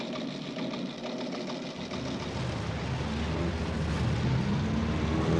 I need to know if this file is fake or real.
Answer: real